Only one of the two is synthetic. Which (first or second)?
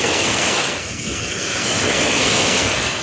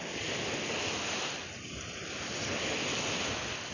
first